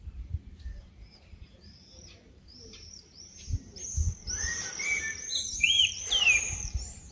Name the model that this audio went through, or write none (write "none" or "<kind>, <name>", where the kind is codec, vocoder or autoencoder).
vocoder, BigVGAN v2